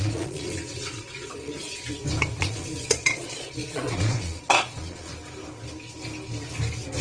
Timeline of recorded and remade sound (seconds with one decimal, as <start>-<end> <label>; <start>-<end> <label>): 0.0-1.5 remade; 1.5-2.4 recorded; 2.4-5.1 remade; 5.1-7.0 recorded